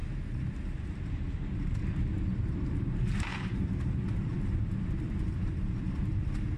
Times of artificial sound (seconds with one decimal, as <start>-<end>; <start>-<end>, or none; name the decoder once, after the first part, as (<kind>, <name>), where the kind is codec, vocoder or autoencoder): 3.3-6.6 (vocoder, BigVGAN v2)